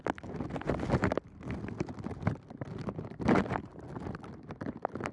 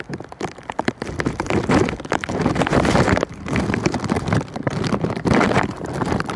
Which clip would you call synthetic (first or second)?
second